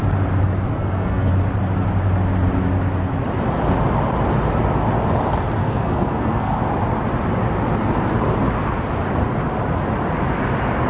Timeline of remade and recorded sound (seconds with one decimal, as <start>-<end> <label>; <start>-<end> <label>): 0.0-0.7 recorded; 0.7-1.3 remade; 1.3-5.6 recorded; 5.6-6.6 remade; 6.6-10.9 recorded